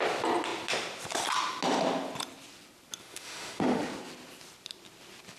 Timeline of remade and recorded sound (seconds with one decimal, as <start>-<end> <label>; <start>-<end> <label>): 0.0-3.0 recorded; 3.0-3.8 remade; 3.8-5.4 recorded